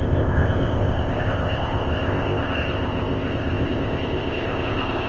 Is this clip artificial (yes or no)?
yes